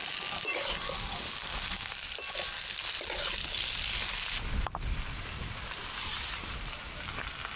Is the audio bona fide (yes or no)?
yes